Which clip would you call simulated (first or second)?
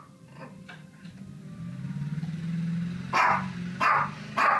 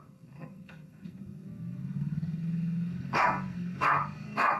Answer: second